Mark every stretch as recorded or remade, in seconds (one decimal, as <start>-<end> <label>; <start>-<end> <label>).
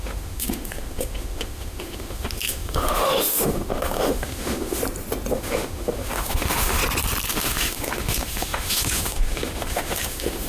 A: 0.0-4.8 remade; 4.8-5.3 recorded; 5.3-6.8 remade; 6.8-7.3 recorded; 7.3-10.5 remade